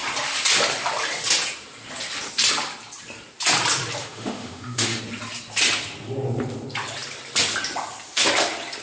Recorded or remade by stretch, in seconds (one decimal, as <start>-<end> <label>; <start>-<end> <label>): 0.0-4.0 recorded; 4.0-5.0 remade; 5.0-8.8 recorded

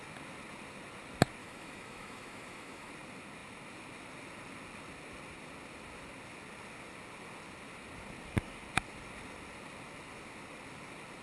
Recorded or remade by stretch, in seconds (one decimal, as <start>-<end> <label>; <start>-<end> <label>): 0.0-1.4 recorded; 1.4-2.9 remade; 2.9-11.2 recorded